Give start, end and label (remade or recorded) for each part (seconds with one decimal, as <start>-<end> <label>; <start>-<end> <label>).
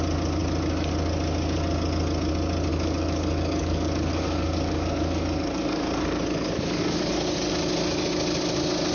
0.0-2.7 recorded; 2.7-7.5 remade; 7.5-8.9 recorded